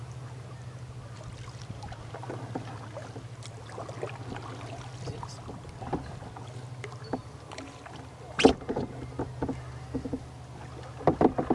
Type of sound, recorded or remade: recorded